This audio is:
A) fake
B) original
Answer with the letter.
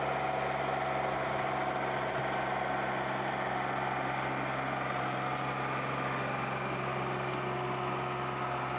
B